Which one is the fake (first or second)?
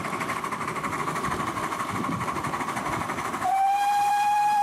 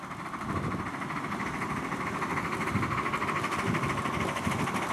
first